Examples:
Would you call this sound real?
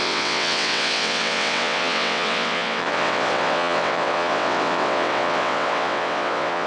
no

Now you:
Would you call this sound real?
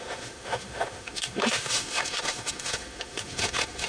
no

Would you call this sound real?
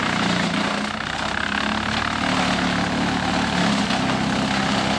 yes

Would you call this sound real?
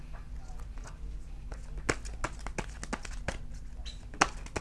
yes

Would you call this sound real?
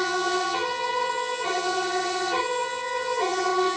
no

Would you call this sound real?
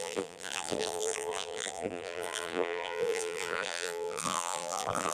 no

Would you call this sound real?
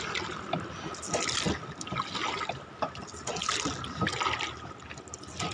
yes